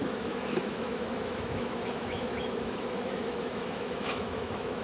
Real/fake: fake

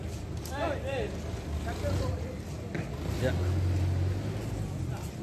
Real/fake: real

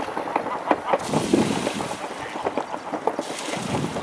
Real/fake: real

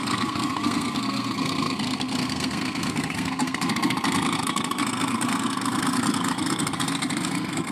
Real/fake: fake